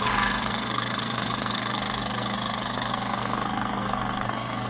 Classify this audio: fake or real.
fake